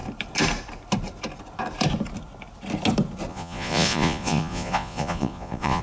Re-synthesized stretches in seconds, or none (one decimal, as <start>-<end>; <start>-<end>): 3.3-5.8